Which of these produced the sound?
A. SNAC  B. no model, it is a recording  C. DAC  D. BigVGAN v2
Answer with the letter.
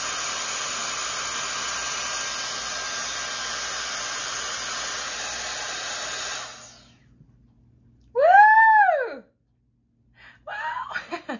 B